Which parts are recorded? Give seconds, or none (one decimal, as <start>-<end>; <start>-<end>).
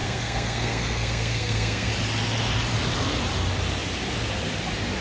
1.9-5.0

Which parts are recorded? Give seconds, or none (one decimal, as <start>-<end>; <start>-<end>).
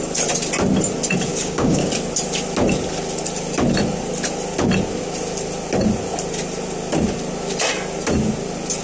0.0-1.3; 1.9-8.8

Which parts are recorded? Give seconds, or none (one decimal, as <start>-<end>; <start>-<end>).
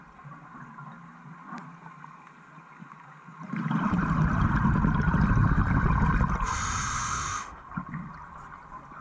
0.0-7.1; 7.7-9.0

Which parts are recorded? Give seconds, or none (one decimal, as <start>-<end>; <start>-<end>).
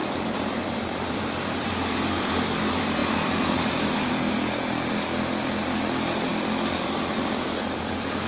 2.3-8.3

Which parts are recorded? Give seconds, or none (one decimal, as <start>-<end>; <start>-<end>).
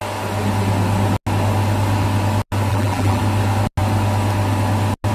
0.0-2.7; 3.2-5.1